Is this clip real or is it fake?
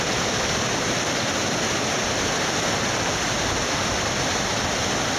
real